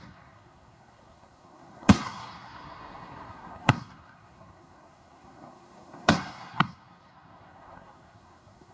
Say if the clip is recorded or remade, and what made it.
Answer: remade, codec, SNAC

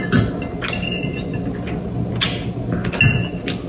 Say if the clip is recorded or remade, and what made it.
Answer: recorded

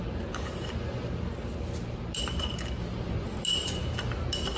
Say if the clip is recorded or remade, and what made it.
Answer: recorded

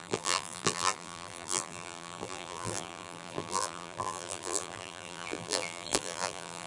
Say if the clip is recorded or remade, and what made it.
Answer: remade, vocoder, BigVGAN v2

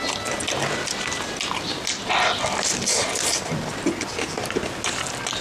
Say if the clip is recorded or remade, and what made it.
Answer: recorded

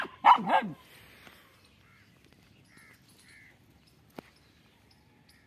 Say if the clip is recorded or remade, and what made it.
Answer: recorded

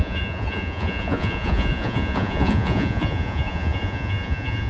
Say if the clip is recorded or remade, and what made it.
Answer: remade, vocoder, Vocos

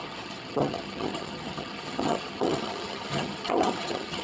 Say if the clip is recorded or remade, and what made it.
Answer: remade, vocoder, HiFi-GAN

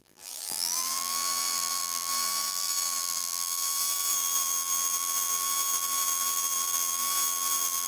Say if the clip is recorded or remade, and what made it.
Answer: remade, vocoder, BigVGAN v2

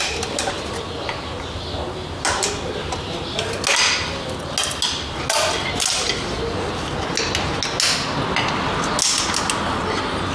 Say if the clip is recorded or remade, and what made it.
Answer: recorded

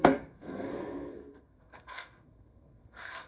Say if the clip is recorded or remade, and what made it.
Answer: remade, codec, SNAC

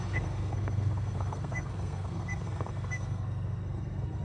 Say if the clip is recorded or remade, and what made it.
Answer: remade, codec, SNAC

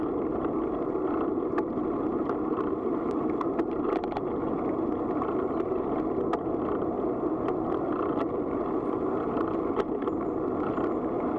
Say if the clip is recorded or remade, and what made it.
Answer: recorded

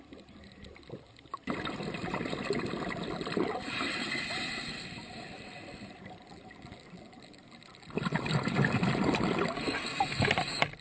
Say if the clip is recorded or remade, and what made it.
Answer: recorded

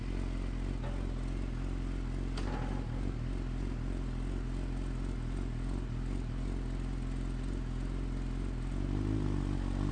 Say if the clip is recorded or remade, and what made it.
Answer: recorded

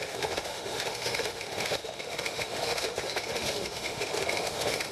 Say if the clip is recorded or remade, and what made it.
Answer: remade, autoencoder, DAC-VAE